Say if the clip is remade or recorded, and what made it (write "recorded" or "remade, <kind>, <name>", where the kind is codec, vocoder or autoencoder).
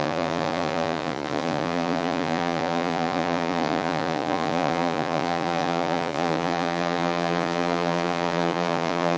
remade, vocoder, Vocos